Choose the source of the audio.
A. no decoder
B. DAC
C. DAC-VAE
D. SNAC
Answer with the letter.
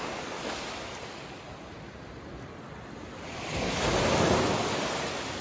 A